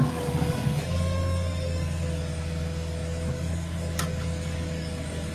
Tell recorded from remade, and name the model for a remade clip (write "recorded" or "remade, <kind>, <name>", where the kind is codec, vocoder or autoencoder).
remade, codec, DAC